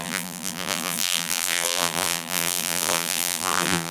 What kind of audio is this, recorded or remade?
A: remade